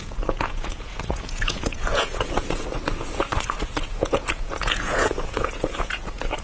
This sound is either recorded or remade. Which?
remade